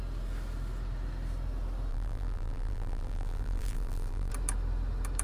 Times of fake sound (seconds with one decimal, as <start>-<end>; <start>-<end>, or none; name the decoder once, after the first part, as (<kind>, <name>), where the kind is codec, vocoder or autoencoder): 1.9-4.3 (vocoder, BigVGAN v2)